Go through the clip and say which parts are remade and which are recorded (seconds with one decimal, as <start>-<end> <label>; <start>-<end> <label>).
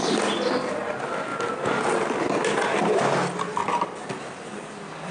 0.0-5.1 recorded